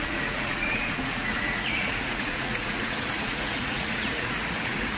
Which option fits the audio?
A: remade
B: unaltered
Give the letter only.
A